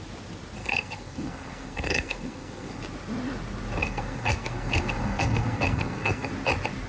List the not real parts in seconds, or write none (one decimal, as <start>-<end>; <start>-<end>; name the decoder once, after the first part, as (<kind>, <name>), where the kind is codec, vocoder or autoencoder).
0.6-2.8 (codec, SNAC); 3.8-6.3